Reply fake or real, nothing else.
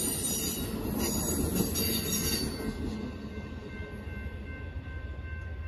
real